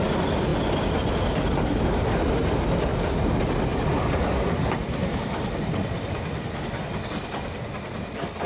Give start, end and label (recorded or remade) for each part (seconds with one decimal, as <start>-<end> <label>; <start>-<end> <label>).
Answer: 0.0-8.5 recorded